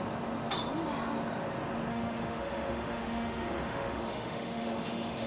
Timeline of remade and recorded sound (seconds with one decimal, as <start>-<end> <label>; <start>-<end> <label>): 0.0-1.9 recorded; 1.9-5.3 remade